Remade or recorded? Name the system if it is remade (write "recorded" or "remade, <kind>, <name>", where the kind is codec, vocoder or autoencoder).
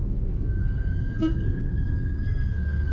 remade, codec, SNAC